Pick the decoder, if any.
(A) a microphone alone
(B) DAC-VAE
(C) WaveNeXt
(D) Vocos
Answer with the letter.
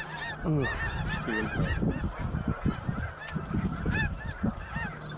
A